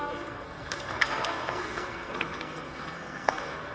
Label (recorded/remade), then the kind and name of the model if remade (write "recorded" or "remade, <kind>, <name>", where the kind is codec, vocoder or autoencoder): remade, codec, SNAC